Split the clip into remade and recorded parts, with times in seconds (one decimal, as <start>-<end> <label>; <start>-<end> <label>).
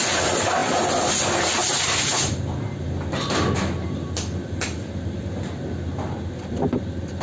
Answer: 0.0-7.2 recorded